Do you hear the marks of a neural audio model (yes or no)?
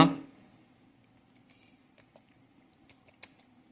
no